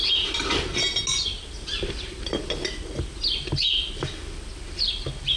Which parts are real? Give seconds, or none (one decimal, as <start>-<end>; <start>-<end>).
0.0-5.4